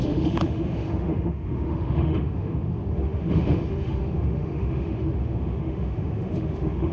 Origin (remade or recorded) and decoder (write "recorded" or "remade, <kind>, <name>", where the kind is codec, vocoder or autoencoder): remade, autoencoder, DAC-VAE